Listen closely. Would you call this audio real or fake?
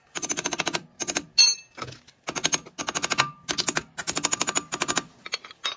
real